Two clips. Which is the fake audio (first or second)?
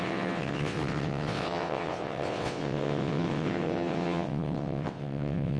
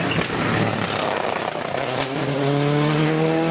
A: first